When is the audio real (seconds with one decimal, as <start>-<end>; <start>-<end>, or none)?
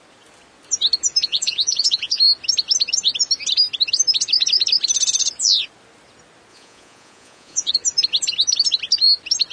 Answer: 0.0-1.2; 2.2-6.5; 7.7-9.5